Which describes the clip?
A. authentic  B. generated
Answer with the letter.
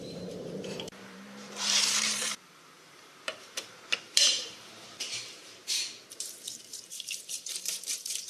B